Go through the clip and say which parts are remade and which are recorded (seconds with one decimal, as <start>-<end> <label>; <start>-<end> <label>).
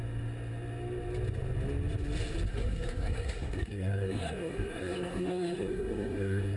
0.0-2.5 recorded; 2.5-6.6 remade